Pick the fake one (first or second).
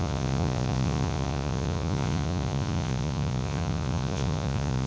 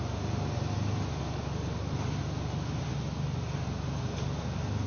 first